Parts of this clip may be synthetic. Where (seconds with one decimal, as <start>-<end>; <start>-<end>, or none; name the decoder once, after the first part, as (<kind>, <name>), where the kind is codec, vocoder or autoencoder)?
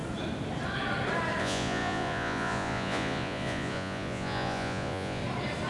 1.4-5.2 (vocoder, Vocos)